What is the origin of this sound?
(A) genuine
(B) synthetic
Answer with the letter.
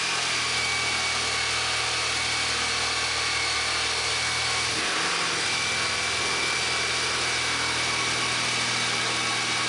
A